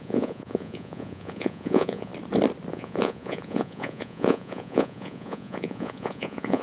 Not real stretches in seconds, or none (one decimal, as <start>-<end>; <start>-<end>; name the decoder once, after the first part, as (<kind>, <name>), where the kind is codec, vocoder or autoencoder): 0.0-2.1 (vocoder, Vocos); 2.7-6.6